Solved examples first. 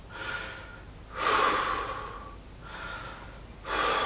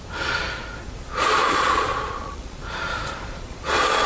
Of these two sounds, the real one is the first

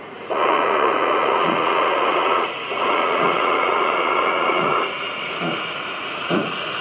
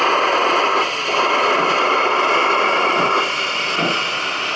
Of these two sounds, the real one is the second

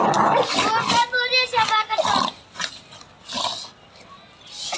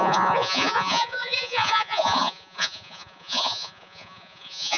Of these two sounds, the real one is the first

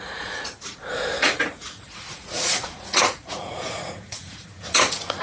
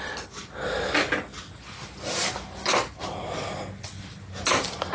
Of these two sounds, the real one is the second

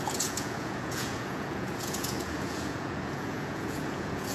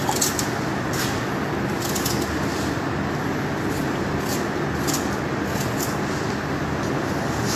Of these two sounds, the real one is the second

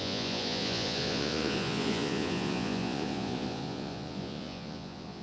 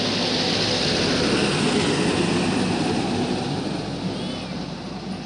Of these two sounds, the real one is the second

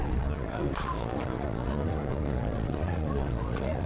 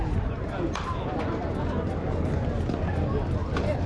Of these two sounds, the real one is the second